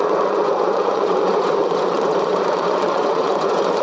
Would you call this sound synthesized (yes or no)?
yes